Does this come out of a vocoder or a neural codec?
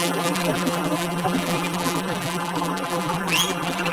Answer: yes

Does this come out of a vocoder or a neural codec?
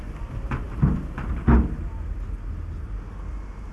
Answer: no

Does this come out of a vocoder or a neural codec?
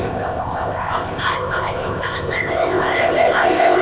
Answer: yes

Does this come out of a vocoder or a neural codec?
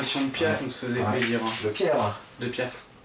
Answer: no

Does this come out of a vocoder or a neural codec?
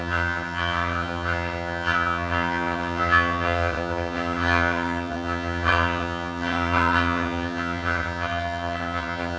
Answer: yes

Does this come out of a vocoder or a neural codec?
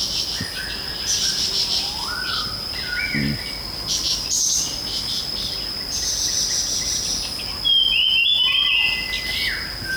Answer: no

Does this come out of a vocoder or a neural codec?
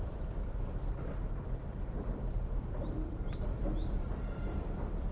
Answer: yes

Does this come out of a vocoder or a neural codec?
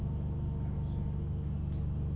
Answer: no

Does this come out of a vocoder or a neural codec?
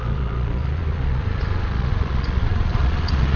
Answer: yes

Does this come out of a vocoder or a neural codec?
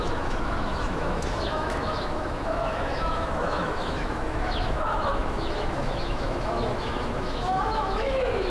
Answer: yes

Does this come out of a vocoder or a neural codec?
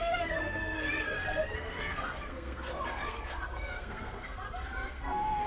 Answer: yes